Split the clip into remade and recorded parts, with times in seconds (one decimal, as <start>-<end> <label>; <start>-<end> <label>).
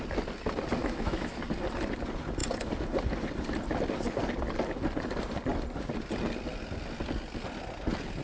0.0-0.8 recorded; 0.8-1.4 remade; 1.4-8.2 recorded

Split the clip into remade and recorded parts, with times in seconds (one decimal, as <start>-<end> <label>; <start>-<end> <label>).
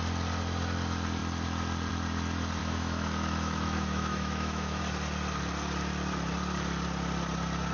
0.0-2.6 recorded; 2.6-4.8 remade; 4.8-7.7 recorded